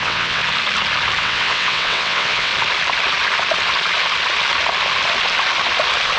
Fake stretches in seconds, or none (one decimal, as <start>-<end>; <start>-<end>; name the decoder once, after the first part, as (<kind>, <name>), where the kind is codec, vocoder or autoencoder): 0.0-0.4 (vocoder, WaveNeXt); 1.2-2.5